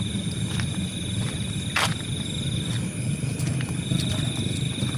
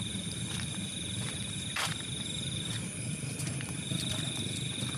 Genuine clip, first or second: first